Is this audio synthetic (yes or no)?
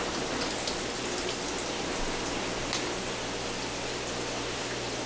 no